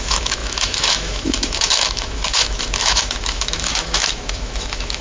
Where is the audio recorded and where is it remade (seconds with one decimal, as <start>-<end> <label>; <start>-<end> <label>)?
0.0-5.0 remade